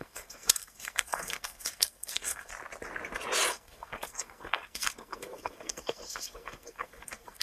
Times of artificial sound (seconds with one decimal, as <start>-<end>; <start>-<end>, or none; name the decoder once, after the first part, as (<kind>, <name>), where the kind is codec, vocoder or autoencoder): 0.0-2.5 (codec, SNAC); 3.5-7.4